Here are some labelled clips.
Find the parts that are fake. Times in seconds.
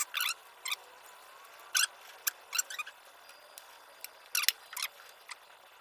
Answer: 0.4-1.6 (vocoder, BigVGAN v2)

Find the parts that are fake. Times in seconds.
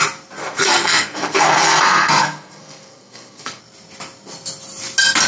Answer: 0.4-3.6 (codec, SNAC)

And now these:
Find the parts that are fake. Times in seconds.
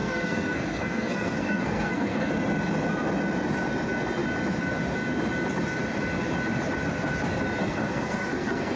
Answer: 0.0-2.3 (codec, SNAC); 7.6-8.8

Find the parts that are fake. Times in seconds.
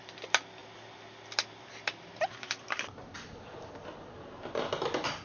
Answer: none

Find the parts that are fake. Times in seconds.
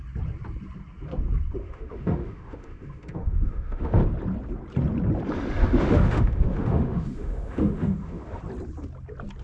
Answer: 1.6-4.0 (autoencoder, DAC-VAE); 5.6-8.4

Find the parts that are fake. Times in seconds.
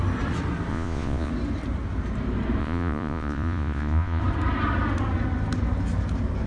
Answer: 0.7-1.3 (vocoder, Vocos); 2.6-4.2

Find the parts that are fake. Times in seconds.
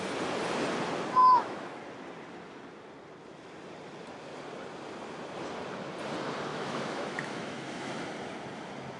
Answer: 1.2-1.8 (autoencoder, DAC-VAE); 6.5-7.9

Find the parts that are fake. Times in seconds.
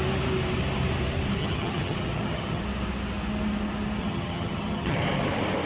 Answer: 1.4-2.6 (vocoder, HiFi-GAN); 4.0-5.0